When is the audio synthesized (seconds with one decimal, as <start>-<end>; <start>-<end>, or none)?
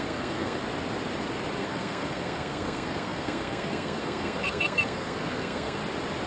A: 0.0-0.6; 1.6-5.8